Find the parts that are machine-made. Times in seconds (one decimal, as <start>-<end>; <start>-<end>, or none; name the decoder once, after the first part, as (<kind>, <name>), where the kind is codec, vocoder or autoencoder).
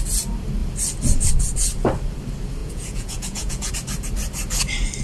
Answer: 2.6-3.7 (vocoder, Vocos)